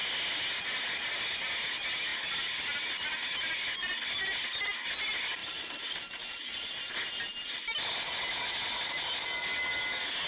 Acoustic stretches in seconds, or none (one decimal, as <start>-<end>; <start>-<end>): 0.0-10.3